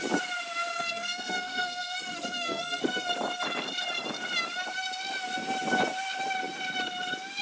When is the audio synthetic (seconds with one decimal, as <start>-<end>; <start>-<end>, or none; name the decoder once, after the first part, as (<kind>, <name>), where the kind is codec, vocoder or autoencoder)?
0.7-3.1 (codec, SNAC)